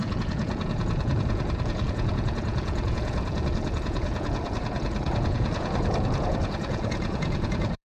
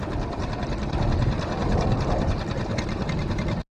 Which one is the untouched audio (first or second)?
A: second